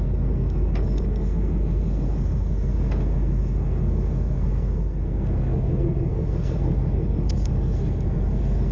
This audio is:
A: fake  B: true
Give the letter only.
A